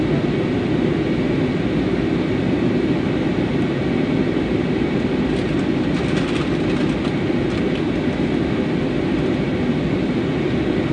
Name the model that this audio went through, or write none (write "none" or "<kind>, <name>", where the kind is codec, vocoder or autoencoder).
none